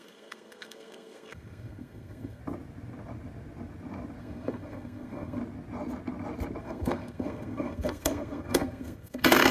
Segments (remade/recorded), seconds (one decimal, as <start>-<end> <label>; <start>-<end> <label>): 0.0-2.4 remade; 2.4-4.2 recorded; 4.2-5.4 remade; 5.4-6.6 recorded; 6.6-9.5 remade